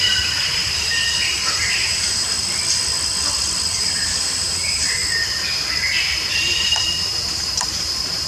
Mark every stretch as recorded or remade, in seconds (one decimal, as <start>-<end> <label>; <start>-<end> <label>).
0.0-2.3 remade; 2.3-3.7 recorded; 3.7-5.0 remade; 5.0-6.3 recorded; 6.3-8.3 remade